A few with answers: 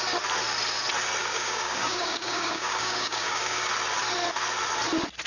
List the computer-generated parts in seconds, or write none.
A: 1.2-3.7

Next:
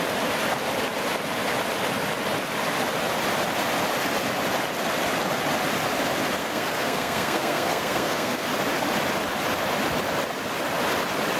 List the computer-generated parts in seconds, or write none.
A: 6.4-8.5

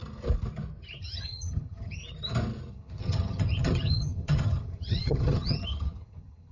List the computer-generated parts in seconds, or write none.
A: 1.0-2.0; 2.7-6.5